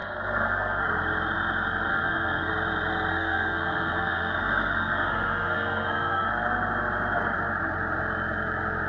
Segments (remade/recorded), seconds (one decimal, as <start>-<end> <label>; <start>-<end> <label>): 0.0-0.8 remade; 0.8-1.9 recorded; 1.9-2.5 remade; 2.5-3.1 recorded; 3.1-6.3 remade; 6.3-8.9 recorded

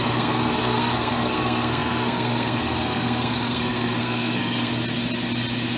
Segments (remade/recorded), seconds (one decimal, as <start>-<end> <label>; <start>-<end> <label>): 0.0-4.7 remade; 4.7-5.8 recorded

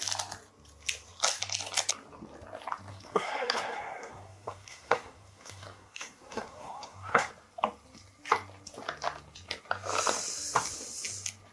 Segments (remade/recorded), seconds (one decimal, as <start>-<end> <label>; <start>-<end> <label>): 0.0-2.9 recorded; 2.9-7.3 remade; 7.3-11.5 recorded